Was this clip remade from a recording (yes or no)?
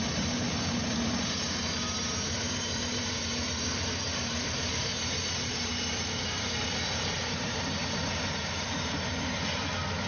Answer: yes